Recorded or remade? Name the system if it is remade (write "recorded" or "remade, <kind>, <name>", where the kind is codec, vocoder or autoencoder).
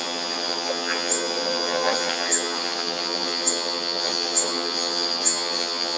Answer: remade, vocoder, HiFi-GAN